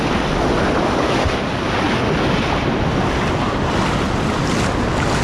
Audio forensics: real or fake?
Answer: real